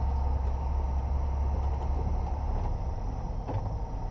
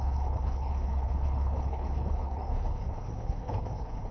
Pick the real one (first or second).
first